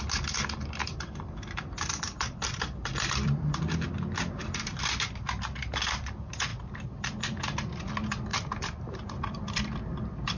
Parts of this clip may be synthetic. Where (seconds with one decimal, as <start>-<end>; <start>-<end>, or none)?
0.8-3.6; 8.3-9.4